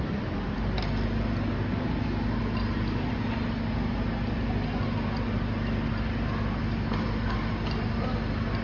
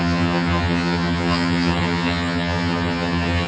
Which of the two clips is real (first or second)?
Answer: first